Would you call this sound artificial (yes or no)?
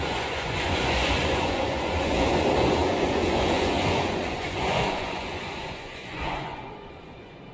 yes